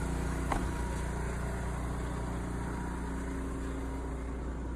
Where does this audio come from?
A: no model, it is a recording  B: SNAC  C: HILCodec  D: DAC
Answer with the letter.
A